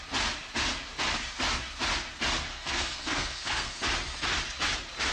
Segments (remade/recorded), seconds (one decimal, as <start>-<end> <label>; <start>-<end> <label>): 0.0-2.5 recorded; 2.5-3.8 remade; 3.8-5.1 recorded